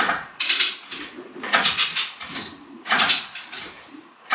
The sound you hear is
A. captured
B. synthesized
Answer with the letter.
B